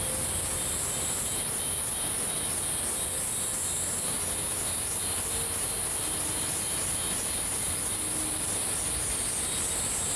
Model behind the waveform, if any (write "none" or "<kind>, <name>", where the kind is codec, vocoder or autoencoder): none